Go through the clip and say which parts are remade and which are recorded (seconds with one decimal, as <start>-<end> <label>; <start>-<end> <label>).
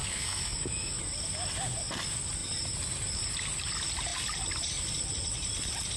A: 0.0-1.0 remade; 1.0-6.0 recorded